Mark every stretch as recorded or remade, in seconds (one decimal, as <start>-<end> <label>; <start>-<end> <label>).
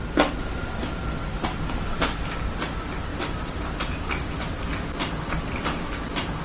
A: 0.0-6.4 recorded